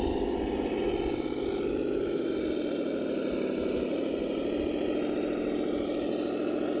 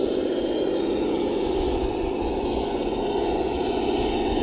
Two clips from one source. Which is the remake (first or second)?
second